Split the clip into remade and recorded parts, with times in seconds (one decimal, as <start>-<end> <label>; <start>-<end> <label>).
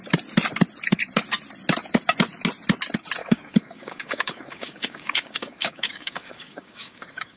0.0-3.2 recorded; 3.2-7.4 remade